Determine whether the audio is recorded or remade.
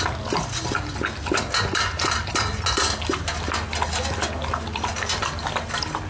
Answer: recorded